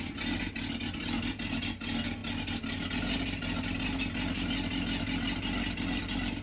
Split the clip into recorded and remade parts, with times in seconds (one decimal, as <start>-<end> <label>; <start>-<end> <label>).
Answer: 0.0-6.4 recorded